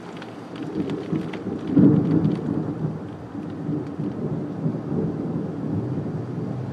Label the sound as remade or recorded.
recorded